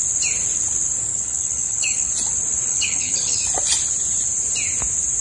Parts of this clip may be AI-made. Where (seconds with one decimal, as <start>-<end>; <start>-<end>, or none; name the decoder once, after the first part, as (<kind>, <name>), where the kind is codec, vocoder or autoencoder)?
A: 1.1-2.1 (codec, HILCodec); 2.7-3.4